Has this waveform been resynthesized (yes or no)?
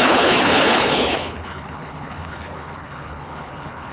yes